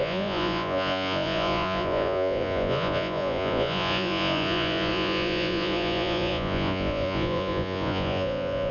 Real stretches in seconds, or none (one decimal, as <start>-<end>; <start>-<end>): none